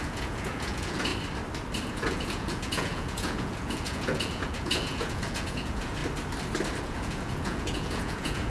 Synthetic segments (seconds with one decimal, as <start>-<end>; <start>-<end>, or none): 0.0-1.1; 1.9-6.0; 6.8-8.5